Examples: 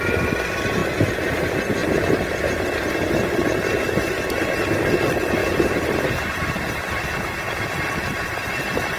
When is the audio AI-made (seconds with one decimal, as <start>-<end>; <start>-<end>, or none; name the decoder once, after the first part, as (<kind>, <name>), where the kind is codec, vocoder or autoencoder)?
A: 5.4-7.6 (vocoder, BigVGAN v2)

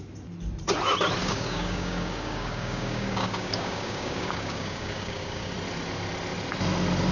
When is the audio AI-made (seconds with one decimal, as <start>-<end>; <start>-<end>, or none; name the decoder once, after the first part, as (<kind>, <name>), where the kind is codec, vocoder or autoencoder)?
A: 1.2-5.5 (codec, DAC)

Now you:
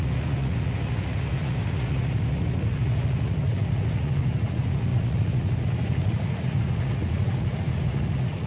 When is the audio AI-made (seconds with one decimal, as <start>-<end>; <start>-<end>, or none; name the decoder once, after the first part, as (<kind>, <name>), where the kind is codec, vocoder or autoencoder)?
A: 0.0-8.5 (vocoder, Vocos)

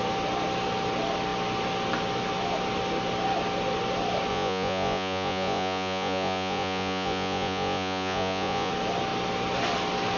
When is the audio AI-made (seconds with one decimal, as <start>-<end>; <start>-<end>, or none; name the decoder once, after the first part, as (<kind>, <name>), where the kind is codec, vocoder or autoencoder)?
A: 4.3-8.7 (vocoder, Vocos)

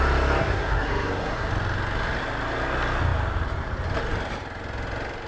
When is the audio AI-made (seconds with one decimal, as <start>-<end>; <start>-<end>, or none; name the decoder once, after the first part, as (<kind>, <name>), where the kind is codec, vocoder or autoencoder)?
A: 0.4-1.5 (codec, SNAC)